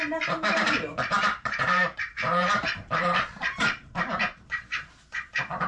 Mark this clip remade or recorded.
remade